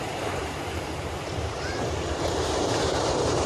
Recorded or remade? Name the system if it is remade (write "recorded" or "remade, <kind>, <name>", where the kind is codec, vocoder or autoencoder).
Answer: remade, vocoder, BigVGAN v2